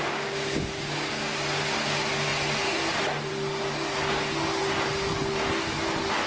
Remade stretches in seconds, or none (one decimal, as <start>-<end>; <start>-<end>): 0.0-1.2